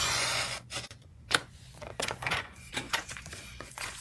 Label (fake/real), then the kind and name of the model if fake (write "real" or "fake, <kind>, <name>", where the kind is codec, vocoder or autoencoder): fake, vocoder, Vocos